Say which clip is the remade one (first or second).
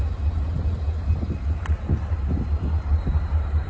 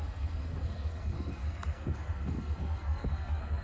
second